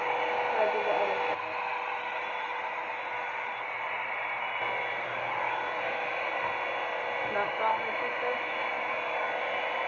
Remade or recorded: recorded